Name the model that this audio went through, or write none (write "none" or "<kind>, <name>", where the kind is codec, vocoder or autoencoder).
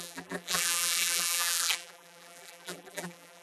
vocoder, BigVGAN v2